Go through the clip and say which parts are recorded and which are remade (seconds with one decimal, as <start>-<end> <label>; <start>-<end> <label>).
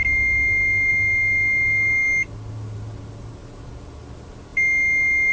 0.0-5.3 recorded